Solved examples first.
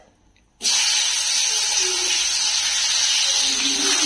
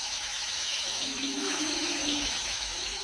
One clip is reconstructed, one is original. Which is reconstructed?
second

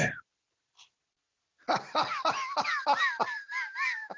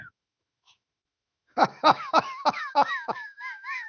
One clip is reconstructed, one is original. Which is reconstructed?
second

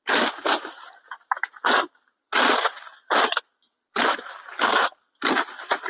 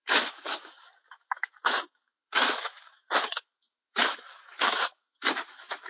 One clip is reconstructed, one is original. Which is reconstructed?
second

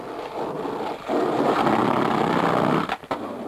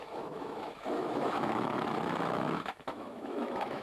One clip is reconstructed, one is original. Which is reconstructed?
second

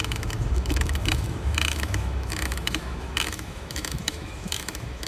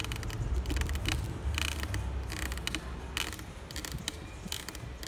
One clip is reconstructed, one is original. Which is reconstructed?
first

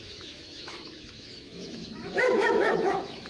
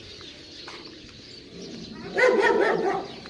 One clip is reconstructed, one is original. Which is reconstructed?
first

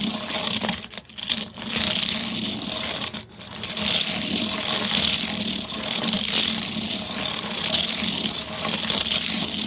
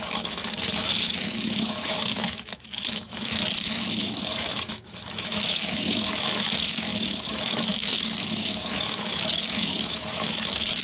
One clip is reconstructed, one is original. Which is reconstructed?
second